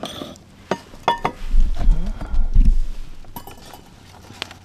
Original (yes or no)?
yes